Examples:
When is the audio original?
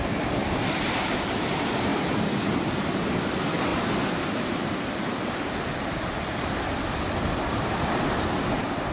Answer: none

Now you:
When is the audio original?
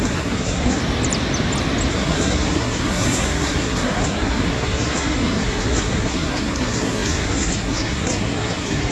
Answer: 0.8-1.9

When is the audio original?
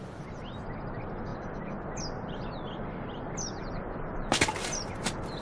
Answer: 0.0-5.4